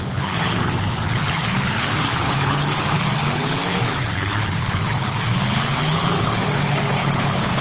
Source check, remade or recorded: remade